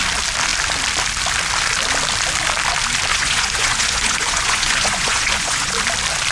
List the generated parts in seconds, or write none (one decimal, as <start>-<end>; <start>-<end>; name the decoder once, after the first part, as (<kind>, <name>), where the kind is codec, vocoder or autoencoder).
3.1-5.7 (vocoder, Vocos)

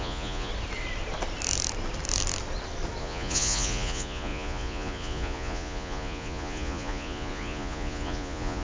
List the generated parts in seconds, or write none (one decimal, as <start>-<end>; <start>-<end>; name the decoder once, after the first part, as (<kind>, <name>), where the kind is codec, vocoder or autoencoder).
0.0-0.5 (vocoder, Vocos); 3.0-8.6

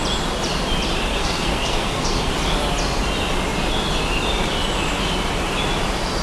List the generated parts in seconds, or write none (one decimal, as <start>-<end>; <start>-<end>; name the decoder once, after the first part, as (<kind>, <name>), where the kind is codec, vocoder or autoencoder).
1.1-2.3 (codec, SNAC)

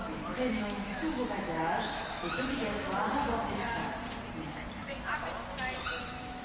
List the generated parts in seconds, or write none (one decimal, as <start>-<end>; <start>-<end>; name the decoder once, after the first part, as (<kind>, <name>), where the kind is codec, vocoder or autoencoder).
0.0-2.8 (autoencoder, DAC-VAE); 3.4-3.8; 6.0-6.4

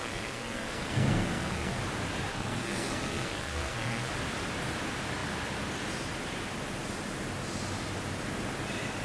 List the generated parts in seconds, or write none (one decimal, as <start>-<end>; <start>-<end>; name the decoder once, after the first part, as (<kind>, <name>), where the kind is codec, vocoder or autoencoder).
0.0-1.8 (codec, SNAC); 2.3-4.1